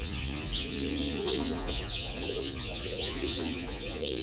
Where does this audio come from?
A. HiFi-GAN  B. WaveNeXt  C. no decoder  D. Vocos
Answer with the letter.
D